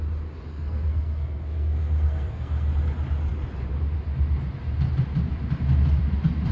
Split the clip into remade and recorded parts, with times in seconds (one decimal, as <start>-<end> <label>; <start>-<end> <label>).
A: 0.0-0.5 recorded; 0.5-2.7 remade; 2.7-6.5 recorded